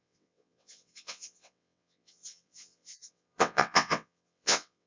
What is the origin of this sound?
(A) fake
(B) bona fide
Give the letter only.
A